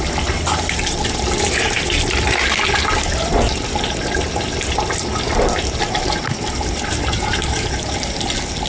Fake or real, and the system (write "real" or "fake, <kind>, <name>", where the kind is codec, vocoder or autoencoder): real